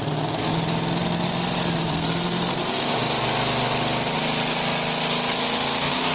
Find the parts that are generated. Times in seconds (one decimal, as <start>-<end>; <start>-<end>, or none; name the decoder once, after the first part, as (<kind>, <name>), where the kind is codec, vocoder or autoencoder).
1.9-2.6 (codec, SNAC)